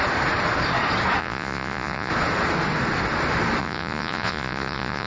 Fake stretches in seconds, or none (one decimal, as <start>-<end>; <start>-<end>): 1.2-2.1; 3.6-5.1